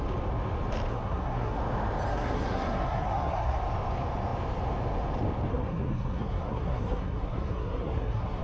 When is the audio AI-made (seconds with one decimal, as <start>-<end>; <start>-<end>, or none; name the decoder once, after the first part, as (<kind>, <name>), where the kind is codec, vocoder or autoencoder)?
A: 0.9-1.6 (codec, SNAC); 2.1-3.6; 5.5-8.4